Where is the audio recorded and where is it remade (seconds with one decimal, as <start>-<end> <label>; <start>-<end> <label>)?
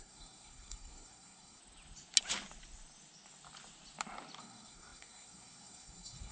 0.0-1.6 remade; 1.6-4.4 recorded; 4.4-6.3 remade